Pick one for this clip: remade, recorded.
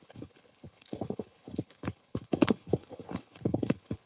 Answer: remade